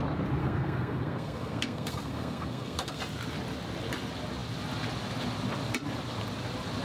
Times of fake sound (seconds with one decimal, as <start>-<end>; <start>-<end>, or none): 0.4-3.0